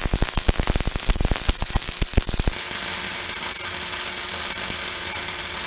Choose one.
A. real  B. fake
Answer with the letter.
A